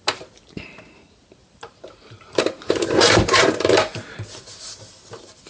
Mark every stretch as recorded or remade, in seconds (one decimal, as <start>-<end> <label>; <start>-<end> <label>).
0.0-1.4 recorded; 1.4-4.7 remade; 4.7-5.5 recorded